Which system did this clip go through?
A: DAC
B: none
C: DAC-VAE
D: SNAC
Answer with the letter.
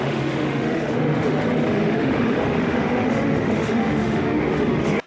C